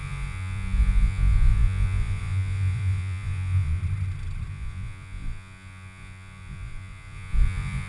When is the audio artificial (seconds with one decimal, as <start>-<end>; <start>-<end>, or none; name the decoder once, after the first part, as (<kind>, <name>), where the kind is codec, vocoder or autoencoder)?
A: 0.0-3.8 (vocoder, Vocos); 4.5-7.9